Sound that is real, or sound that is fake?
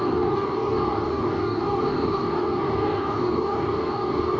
fake